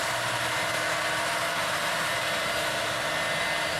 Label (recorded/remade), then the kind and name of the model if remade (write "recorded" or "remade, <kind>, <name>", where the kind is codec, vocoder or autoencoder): recorded